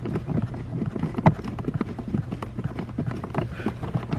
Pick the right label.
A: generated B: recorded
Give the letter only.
B